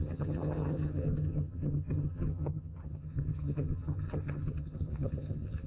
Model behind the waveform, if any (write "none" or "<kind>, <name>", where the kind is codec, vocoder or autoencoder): vocoder, HiFi-GAN